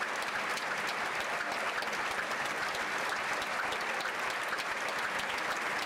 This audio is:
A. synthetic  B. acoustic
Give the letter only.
B